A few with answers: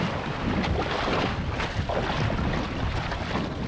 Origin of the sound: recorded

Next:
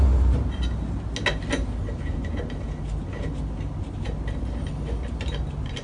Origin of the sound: recorded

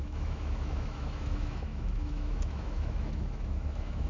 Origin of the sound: remade